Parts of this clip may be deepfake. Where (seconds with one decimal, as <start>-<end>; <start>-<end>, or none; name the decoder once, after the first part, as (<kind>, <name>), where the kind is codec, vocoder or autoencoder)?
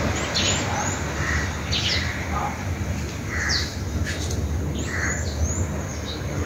5.9-6.5 (codec, DAC)